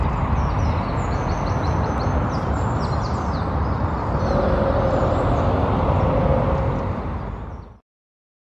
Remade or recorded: recorded